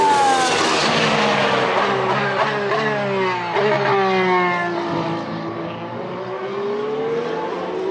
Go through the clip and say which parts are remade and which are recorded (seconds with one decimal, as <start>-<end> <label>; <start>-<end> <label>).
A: 0.0-7.9 recorded